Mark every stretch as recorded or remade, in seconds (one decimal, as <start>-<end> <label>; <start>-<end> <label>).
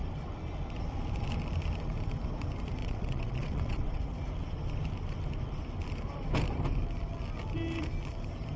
0.0-2.8 recorded; 2.8-4.0 remade; 4.0-8.6 recorded